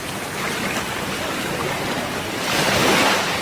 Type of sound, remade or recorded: recorded